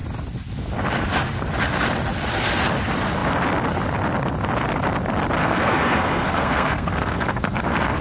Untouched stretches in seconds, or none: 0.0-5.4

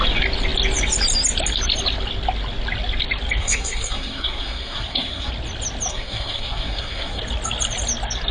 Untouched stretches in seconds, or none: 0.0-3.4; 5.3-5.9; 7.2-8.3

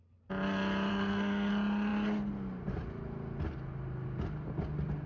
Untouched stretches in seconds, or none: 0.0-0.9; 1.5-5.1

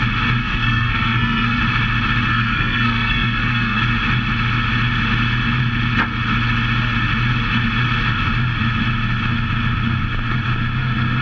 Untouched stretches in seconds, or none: 0.0-0.4; 1.6-2.3; 3.8-11.2

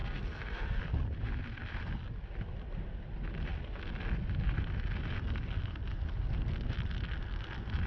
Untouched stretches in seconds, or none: 0.8-7.9

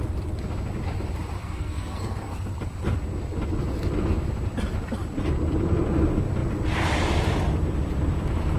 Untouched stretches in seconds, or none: 0.0-1.4; 2.3-8.6

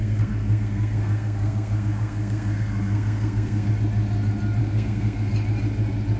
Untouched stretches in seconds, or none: 3.7-4.6; 5.3-6.2